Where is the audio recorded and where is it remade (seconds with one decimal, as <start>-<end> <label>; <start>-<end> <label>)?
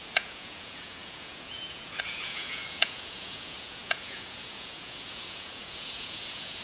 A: 0.0-6.6 remade